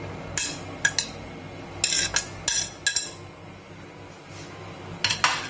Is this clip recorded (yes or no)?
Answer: yes